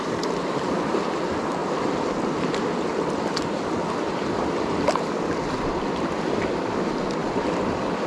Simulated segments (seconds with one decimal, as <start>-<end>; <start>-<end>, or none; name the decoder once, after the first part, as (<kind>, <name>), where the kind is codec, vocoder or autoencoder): 1.6-2.2 (vocoder, BigVGAN v2); 2.9-4.2; 7.2-8.1